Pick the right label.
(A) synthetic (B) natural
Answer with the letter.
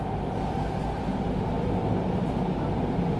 B